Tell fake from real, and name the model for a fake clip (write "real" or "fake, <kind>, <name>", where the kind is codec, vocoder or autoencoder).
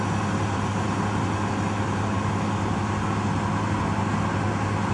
real